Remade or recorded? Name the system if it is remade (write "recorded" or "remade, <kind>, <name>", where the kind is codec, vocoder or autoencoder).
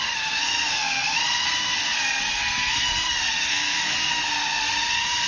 remade, codec, SNAC